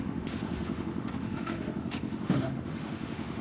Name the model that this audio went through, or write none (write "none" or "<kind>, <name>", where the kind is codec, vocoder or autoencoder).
autoencoder, DAC-VAE